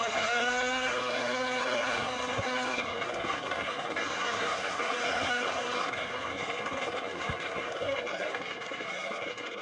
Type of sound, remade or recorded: remade